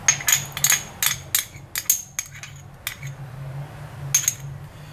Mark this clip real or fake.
real